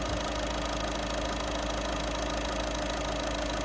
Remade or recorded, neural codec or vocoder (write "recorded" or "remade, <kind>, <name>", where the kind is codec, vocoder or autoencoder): recorded